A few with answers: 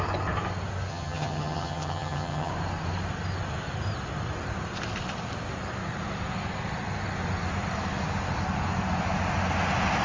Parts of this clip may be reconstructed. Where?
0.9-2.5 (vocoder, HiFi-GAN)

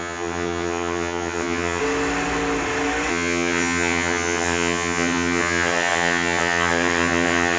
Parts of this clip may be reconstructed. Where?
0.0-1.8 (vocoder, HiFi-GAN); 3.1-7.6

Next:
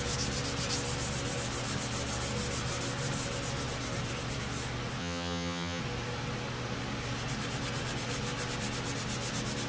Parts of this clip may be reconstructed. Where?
5.0-5.8 (vocoder, HiFi-GAN)

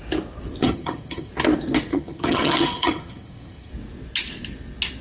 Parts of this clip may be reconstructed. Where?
0.6-1.3 (vocoder, HiFi-GAN); 1.9-3.7